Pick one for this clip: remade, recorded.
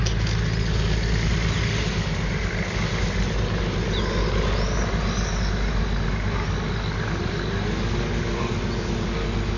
recorded